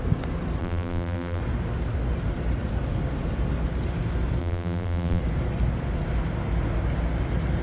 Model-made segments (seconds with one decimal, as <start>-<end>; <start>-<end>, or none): 0.6-1.4; 4.4-5.2